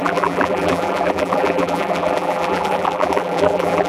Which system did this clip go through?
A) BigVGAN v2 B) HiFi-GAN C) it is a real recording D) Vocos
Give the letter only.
A